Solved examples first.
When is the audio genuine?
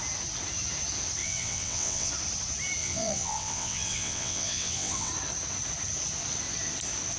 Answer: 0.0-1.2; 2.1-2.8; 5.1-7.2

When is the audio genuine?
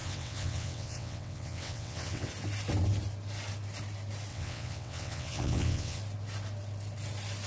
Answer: 2.3-4.3; 6.0-7.5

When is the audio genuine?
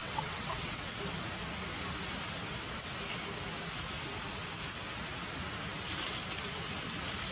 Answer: 1.0-7.3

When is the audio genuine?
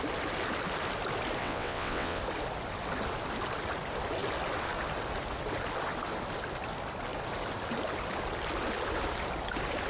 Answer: 0.0-1.4; 2.2-9.9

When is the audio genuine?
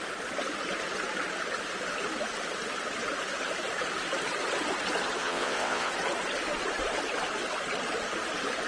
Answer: 0.0-5.2; 5.9-8.7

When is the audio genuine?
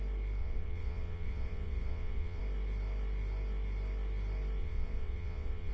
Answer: 0.0-0.4; 2.4-4.6